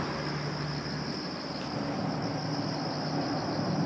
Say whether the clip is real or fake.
real